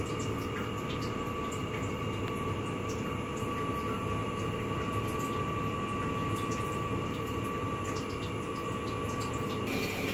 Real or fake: real